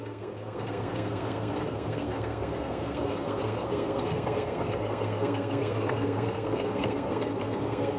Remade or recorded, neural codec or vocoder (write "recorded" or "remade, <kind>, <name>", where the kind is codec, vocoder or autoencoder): remade, codec, SNAC